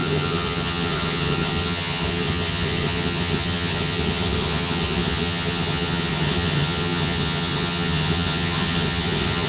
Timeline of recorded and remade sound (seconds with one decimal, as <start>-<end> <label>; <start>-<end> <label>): 0.0-9.5 remade